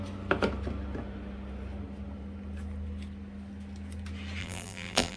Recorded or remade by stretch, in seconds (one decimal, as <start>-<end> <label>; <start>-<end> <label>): 0.0-4.4 recorded; 4.4-5.2 remade